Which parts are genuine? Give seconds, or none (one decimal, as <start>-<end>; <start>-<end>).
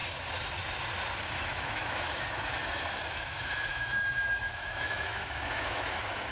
0.0-1.3